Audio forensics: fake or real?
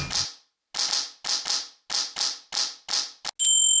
real